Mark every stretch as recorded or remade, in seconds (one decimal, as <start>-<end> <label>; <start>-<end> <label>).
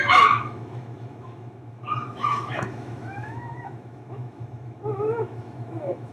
0.0-6.1 remade